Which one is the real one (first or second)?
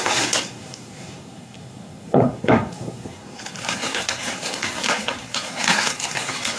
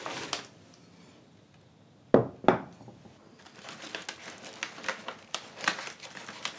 second